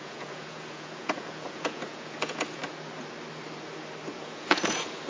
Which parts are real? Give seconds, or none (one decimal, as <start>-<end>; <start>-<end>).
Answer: 2.6-4.1